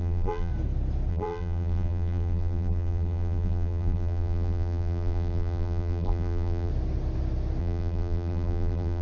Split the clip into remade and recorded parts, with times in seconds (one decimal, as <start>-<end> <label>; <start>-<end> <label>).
0.0-0.5 remade; 0.5-1.1 recorded; 1.1-6.7 remade; 6.7-7.6 recorded; 7.6-9.0 remade